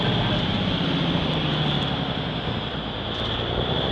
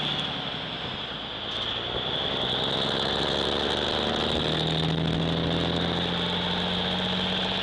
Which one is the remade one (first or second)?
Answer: first